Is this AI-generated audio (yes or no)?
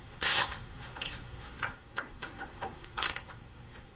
yes